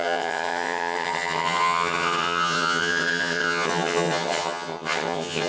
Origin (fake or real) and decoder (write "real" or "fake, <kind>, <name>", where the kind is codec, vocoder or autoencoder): fake, vocoder, HiFi-GAN